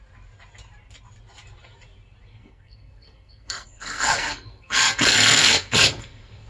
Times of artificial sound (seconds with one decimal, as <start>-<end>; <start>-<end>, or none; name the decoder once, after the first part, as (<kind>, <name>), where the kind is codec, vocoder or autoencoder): 2.3-6.5 (codec, SNAC)